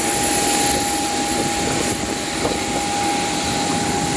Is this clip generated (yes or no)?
no